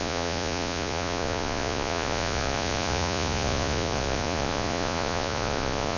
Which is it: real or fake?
fake